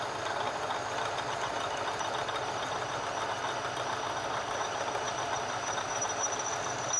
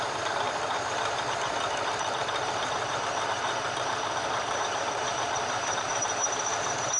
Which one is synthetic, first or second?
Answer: second